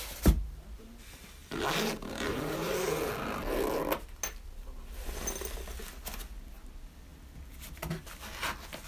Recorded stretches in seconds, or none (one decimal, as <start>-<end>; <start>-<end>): 0.0-1.4; 3.1-8.9